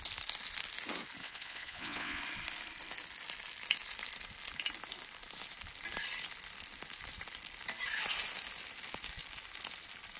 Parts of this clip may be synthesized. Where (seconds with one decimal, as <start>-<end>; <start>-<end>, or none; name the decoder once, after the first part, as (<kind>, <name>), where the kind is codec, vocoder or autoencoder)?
1.2-2.2 (vocoder, WaveNeXt)